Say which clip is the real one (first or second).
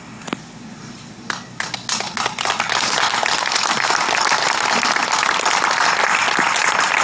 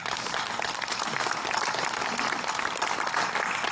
first